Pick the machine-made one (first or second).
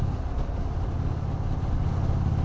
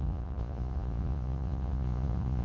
second